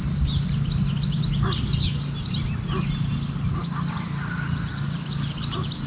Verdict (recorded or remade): recorded